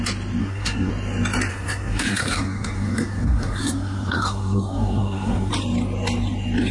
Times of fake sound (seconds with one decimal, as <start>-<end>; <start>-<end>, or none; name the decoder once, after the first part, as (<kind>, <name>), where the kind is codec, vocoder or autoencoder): 0.4-0.9 (codec, SNAC); 1.5-5.5